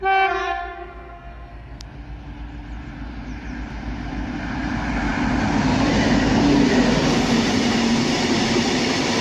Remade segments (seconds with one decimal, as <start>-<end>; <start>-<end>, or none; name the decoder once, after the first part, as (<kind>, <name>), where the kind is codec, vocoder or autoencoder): 0.4-1.8 (codec, SNAC)